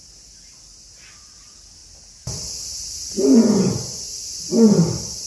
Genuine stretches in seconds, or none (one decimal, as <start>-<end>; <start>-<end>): 0.0-3.1; 4.1-5.3